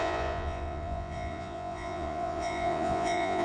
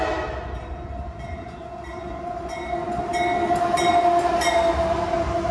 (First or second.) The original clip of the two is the second